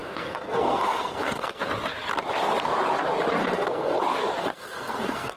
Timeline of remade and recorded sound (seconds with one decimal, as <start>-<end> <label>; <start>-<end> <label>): 0.0-1.6 remade; 1.6-3.4 recorded; 3.4-4.0 remade; 4.0-4.4 recorded; 4.4-5.4 remade